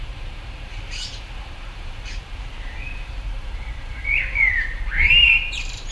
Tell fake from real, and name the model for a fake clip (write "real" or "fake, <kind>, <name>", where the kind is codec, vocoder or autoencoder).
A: fake, vocoder, BigVGAN v2